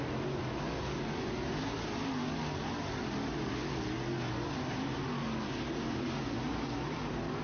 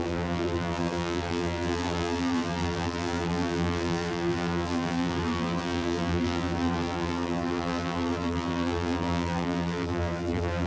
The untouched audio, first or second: first